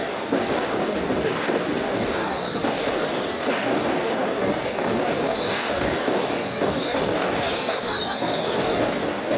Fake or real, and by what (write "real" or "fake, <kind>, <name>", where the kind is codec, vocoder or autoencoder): fake, codec, DAC